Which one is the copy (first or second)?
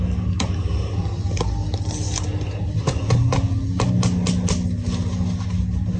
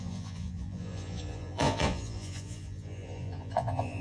second